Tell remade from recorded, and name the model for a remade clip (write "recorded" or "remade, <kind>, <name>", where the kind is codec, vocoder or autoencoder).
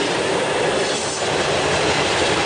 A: recorded